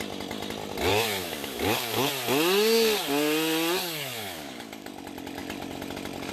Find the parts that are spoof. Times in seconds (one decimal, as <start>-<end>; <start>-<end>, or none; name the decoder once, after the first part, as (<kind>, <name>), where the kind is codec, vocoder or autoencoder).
0.9-2.1 (codec, DAC); 3.8-4.9